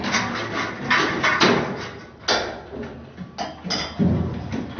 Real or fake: real